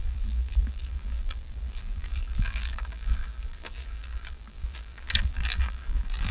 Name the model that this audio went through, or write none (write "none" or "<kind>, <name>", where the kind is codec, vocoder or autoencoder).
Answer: vocoder, BigVGAN v2